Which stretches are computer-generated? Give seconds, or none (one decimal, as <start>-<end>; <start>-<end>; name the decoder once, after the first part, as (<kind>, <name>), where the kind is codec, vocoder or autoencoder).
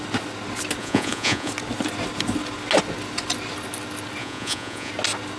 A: 0.8-1.5 (vocoder, Vocos); 4.2-4.9